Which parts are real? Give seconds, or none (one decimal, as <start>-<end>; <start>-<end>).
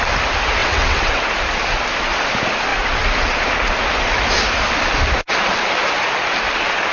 0.0-0.6; 1.2-6.9